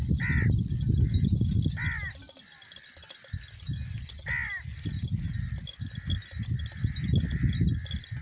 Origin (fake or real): real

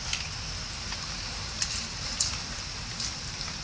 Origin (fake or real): real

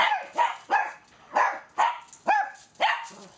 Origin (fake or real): real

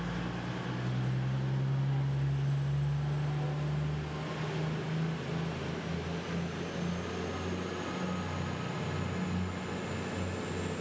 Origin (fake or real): real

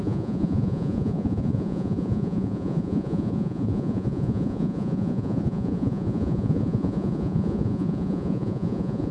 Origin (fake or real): fake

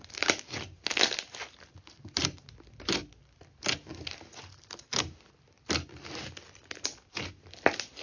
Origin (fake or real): real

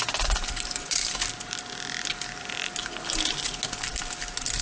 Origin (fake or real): real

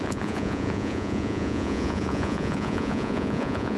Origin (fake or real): fake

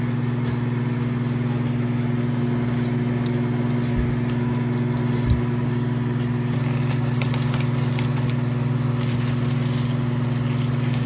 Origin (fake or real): real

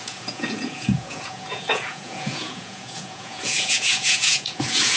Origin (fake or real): fake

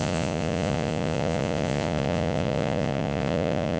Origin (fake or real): fake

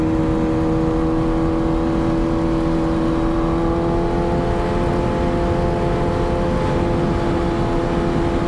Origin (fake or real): real